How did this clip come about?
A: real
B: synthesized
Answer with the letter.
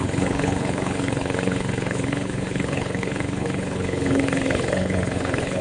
B